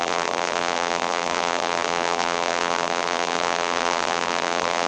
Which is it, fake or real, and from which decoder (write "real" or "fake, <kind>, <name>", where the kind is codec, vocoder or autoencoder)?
fake, vocoder, BigVGAN v2